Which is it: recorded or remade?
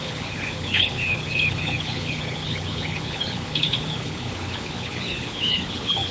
remade